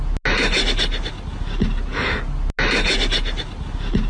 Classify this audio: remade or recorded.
recorded